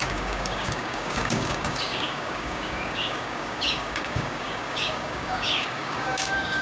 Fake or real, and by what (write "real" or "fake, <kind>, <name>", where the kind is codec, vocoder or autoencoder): fake, codec, DAC